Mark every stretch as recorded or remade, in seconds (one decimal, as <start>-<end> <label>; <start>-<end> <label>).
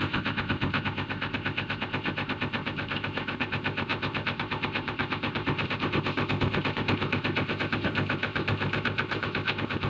0.0-9.9 remade